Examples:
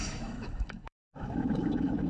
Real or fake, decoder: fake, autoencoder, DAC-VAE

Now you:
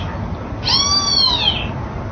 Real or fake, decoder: real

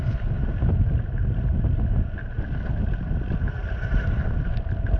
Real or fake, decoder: real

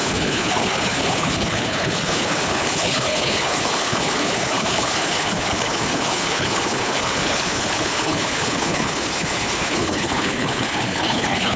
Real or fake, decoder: fake, codec, HILCodec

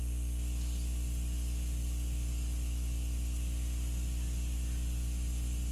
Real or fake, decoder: real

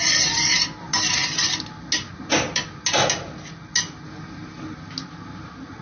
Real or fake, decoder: real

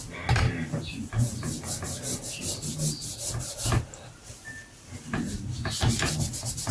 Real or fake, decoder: real